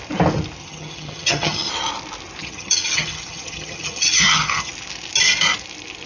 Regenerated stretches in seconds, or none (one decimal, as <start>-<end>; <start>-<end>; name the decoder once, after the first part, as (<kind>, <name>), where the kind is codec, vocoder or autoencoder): 0.6-1.7 (vocoder, HiFi-GAN); 2.4-4.7